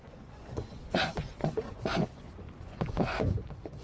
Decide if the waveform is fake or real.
fake